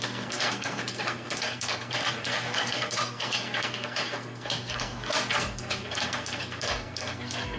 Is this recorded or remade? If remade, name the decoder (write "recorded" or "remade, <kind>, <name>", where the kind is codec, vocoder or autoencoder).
remade, codec, SNAC